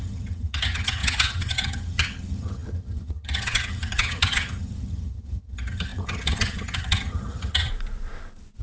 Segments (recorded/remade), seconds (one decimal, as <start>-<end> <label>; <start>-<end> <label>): 0.0-7.7 remade; 7.7-8.6 recorded